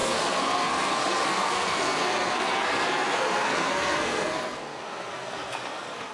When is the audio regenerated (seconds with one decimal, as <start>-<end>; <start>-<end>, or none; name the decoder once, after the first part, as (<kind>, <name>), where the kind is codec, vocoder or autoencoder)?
0.0-6.1 (codec, SNAC)